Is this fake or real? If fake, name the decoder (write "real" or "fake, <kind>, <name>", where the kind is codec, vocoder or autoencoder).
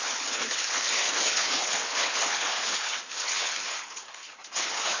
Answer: fake, codec, HILCodec